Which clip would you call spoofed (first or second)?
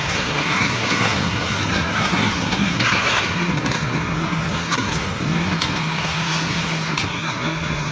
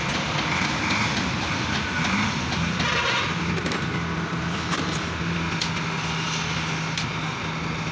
first